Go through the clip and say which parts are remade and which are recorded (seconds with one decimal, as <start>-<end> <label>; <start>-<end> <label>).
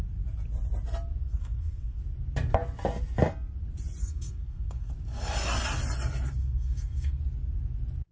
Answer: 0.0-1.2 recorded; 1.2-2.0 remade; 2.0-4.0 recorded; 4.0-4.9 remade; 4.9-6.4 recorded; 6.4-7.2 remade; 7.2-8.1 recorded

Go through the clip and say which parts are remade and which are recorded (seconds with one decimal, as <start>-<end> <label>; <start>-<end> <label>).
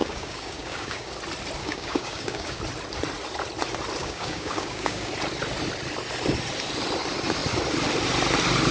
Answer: 0.0-1.1 remade; 1.1-1.6 recorded; 1.6-2.6 remade; 2.6-4.0 recorded; 4.0-5.1 remade; 5.1-8.7 recorded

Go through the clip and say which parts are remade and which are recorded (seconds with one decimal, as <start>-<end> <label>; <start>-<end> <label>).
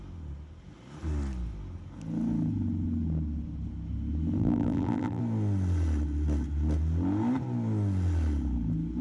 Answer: 0.0-4.4 recorded; 4.4-5.2 remade; 5.2-9.0 recorded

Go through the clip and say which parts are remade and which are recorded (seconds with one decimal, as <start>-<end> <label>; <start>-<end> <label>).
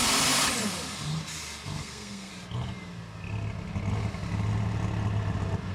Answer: 0.0-1.8 recorded; 1.8-2.3 remade; 2.3-5.7 recorded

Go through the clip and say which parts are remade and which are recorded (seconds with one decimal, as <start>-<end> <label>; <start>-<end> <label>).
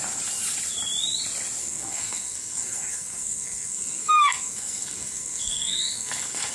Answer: 0.0-1.6 recorded; 1.6-6.5 remade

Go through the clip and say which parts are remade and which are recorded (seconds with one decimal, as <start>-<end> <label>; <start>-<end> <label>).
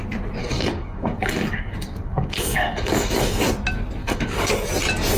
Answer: 0.0-0.4 recorded; 0.4-3.5 remade; 3.5-4.0 recorded; 4.0-4.5 remade; 4.5-5.2 recorded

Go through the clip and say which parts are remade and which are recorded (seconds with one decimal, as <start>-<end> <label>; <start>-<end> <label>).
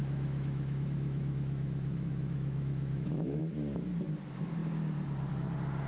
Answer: 0.0-3.4 remade; 3.4-5.9 recorded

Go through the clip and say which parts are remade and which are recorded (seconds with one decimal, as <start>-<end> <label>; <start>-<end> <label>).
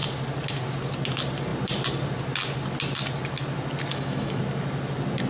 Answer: 0.0-3.9 recorded; 3.9-4.4 remade; 4.4-5.3 recorded